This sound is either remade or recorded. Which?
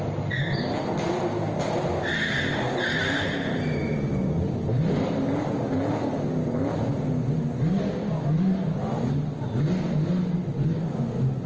recorded